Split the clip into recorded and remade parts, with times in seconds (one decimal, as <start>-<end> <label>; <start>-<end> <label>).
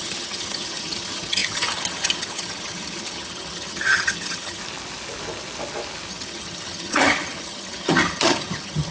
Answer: 0.0-4.6 remade; 4.6-6.1 recorded; 6.1-8.9 remade